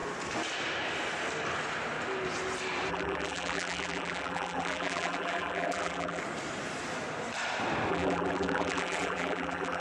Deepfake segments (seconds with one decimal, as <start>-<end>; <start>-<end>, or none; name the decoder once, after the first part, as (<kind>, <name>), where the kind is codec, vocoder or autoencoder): 2.9-6.2 (vocoder, BigVGAN v2); 7.9-9.8